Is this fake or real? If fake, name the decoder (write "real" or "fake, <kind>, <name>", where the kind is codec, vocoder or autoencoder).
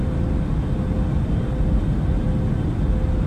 real